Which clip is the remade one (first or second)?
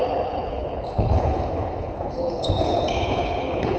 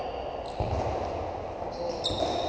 first